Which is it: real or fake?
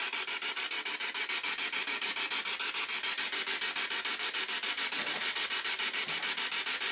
real